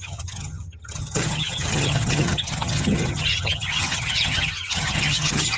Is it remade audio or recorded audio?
remade